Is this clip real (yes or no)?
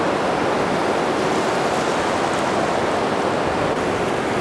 yes